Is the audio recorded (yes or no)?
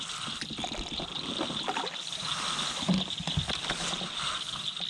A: yes